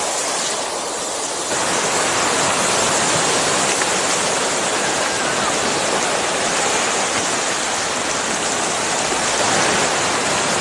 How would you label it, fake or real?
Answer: real